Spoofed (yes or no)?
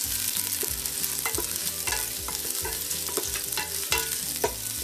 no